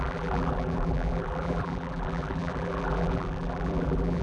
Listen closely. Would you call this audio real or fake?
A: fake